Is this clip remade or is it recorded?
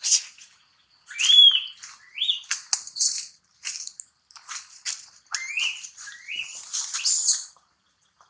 recorded